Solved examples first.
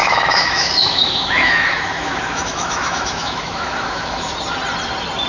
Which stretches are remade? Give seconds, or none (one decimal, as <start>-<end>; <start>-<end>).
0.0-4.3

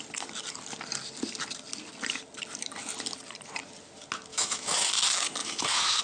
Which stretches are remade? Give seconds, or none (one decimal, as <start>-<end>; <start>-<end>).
4.3-4.9; 5.4-6.0

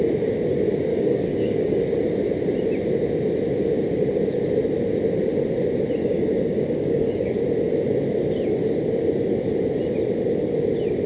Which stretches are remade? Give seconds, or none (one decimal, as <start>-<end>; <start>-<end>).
0.9-1.9; 6.0-7.4